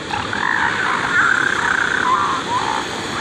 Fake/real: real